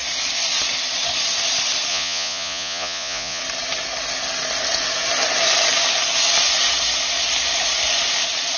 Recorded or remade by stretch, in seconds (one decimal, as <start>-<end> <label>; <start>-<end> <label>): 0.0-1.9 recorded; 1.9-3.4 remade; 3.4-8.6 recorded